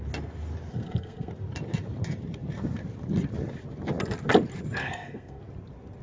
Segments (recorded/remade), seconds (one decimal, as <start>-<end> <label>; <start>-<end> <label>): 0.0-0.7 recorded; 0.7-1.3 remade; 1.3-4.8 recorded; 4.8-5.4 remade; 5.4-6.0 recorded